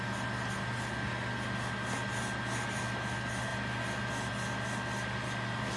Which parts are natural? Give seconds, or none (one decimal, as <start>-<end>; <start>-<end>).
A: 0.0-5.8